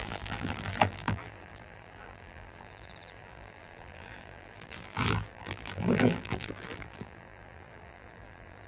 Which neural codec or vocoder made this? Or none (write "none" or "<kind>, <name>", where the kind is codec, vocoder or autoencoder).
vocoder, BigVGAN v2